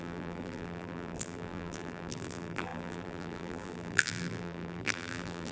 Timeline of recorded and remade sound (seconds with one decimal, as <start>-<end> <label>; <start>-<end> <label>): 0.0-5.5 remade